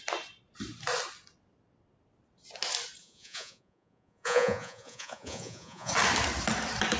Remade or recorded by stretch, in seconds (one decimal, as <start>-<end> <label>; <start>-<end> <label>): 0.0-3.0 recorded; 3.0-5.9 remade; 5.9-7.0 recorded